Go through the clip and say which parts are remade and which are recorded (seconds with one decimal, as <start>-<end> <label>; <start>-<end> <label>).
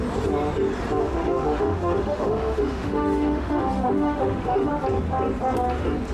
0.0-1.0 recorded; 1.0-4.7 remade; 4.7-6.1 recorded